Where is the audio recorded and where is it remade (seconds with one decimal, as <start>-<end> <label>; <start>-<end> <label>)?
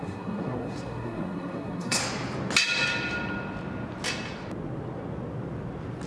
0.0-2.0 remade; 2.0-6.1 recorded